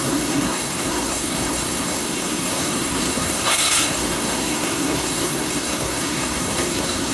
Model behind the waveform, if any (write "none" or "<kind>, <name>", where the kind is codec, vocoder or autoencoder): codec, SNAC